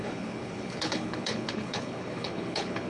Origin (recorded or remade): remade